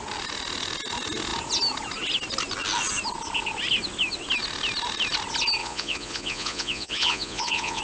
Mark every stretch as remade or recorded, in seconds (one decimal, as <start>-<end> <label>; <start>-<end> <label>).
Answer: 0.0-5.6 recorded; 5.6-7.8 remade